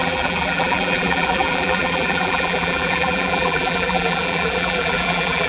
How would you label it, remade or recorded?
remade